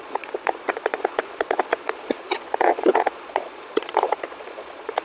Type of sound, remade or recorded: remade